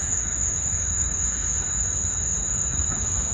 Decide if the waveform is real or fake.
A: fake